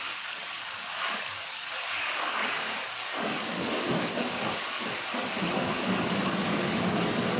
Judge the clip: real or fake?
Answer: fake